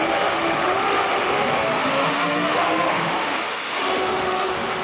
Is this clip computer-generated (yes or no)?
yes